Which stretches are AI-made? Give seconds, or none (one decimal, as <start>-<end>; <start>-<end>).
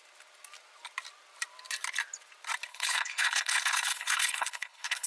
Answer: 2.7-5.1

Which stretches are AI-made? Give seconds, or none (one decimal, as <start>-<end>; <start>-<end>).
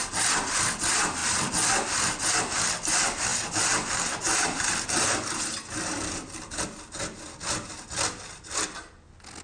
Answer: none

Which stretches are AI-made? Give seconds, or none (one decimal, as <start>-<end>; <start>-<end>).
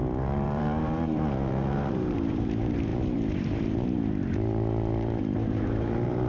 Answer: 0.0-6.3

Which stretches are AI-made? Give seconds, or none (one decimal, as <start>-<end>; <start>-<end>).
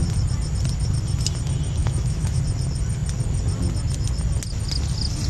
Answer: 1.8-2.4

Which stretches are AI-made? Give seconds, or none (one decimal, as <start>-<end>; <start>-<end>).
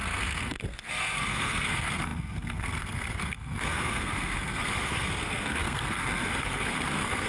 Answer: 0.0-7.3